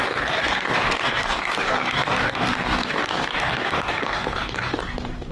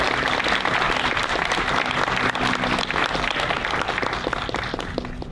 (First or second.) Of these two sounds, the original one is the second